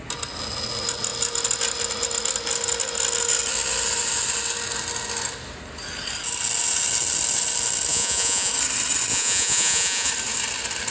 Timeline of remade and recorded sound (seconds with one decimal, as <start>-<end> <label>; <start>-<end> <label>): 0.0-7.9 recorded; 7.9-8.5 remade; 8.5-9.1 recorded; 9.1-10.1 remade; 10.1-10.9 recorded